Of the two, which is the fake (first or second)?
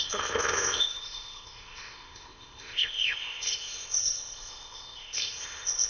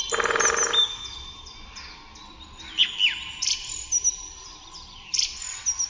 first